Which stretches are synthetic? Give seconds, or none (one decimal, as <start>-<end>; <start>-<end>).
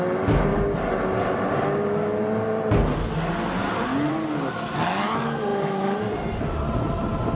none